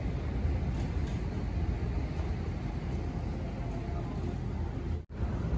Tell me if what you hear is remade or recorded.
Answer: recorded